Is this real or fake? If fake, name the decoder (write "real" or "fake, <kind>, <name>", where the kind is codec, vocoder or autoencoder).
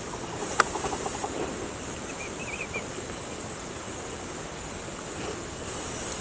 real